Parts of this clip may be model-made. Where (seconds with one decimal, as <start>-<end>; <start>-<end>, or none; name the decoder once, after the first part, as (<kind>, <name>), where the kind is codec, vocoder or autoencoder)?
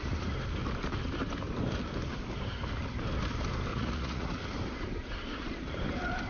3.7-4.4 (vocoder, Vocos)